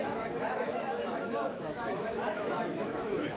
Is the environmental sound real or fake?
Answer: fake